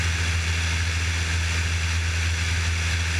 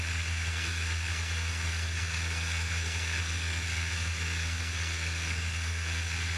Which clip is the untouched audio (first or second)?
first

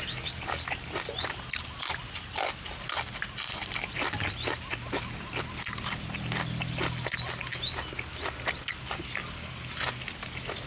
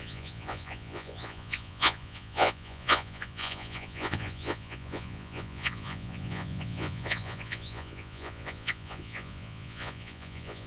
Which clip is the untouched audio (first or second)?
first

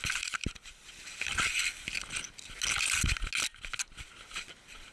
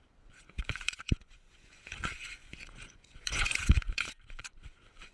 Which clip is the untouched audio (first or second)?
first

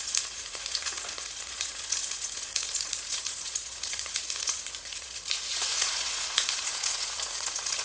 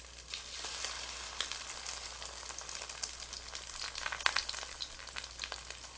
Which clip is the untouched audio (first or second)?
second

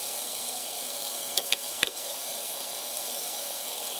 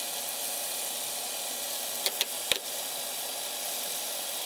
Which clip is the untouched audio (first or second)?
second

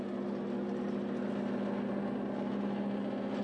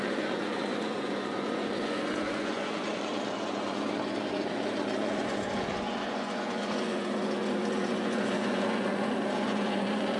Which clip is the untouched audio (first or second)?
first